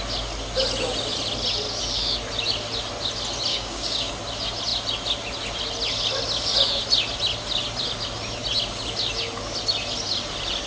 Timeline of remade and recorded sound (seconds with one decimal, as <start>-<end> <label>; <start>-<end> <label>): 0.0-3.5 recorded; 3.5-4.1 remade; 4.1-10.7 recorded